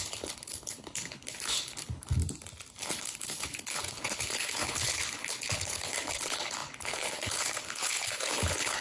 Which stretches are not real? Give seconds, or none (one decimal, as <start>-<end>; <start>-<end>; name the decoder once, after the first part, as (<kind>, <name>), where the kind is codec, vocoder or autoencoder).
0.0-2.2 (codec, HILCodec); 2.8-8.8